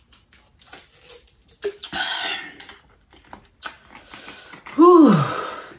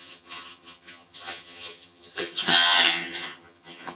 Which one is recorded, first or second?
first